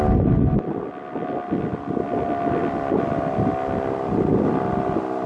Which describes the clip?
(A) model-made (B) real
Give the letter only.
B